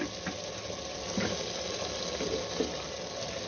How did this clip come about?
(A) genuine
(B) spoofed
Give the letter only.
A